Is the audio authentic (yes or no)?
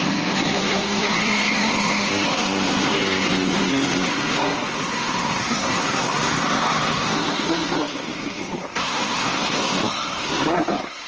no